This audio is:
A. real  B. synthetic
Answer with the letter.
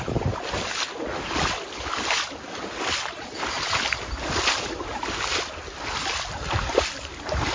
A